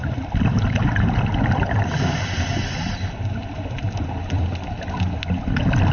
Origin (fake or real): real